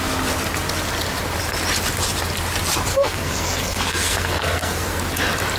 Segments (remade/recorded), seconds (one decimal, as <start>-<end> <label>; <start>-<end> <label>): 0.0-2.9 recorded; 2.9-5.0 remade; 5.0-5.6 recorded